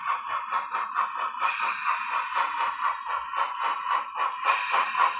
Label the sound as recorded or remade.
recorded